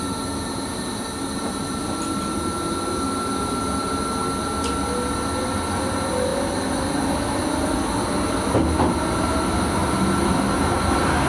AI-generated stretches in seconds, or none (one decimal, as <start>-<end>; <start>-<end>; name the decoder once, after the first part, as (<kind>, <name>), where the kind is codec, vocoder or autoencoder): none